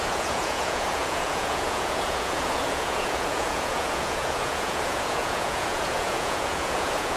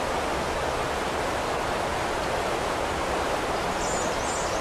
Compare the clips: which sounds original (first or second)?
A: second